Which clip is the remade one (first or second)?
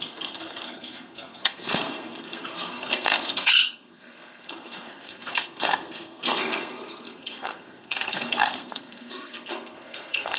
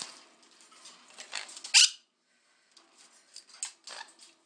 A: first